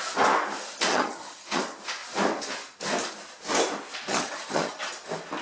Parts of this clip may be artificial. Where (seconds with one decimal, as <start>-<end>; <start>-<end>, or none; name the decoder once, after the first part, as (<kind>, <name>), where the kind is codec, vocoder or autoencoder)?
0.9-1.6 (vocoder, HiFi-GAN); 4.1-4.9